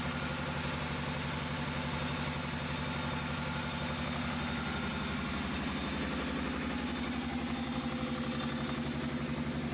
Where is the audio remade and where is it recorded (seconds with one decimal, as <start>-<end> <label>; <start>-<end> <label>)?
0.0-9.7 recorded